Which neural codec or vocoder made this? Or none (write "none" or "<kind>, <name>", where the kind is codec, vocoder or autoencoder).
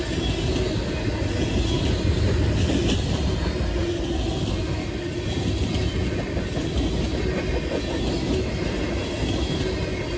none